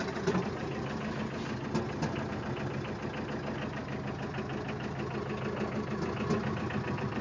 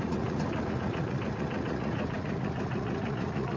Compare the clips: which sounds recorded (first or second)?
first